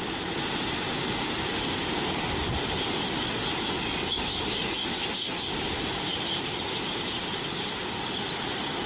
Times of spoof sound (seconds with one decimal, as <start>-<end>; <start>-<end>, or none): 6.1-6.6